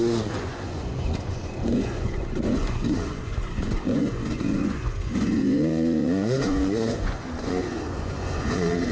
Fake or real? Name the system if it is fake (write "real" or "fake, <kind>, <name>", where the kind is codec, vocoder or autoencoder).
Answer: fake, vocoder, Vocos